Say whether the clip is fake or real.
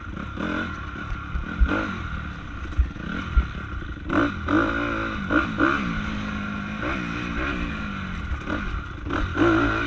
real